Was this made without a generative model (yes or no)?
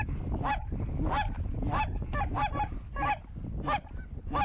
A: yes